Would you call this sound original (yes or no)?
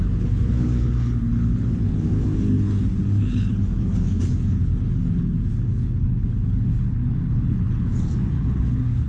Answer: no